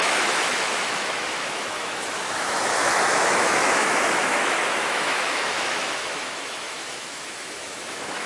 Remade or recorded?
remade